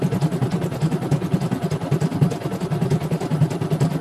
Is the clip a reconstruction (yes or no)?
no